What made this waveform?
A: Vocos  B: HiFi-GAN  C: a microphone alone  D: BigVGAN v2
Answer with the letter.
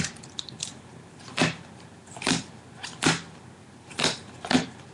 D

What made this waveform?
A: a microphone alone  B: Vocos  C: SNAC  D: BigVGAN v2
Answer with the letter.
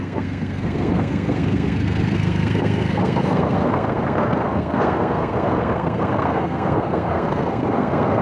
C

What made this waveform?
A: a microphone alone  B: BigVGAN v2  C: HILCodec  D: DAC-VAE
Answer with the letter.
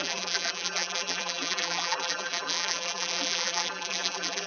B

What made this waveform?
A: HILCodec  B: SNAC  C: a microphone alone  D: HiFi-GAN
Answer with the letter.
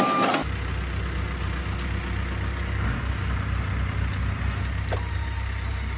C